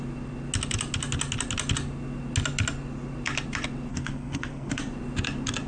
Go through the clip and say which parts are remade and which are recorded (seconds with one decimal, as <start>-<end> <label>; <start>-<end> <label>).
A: 0.0-3.9 recorded; 3.9-4.8 remade; 4.8-5.7 recorded

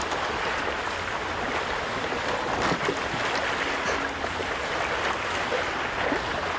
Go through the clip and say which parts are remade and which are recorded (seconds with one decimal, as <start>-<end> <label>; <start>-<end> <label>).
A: 0.0-6.6 recorded

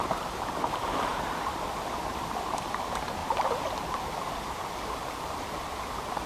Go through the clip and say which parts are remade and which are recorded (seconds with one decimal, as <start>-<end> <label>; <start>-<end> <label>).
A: 0.0-6.3 recorded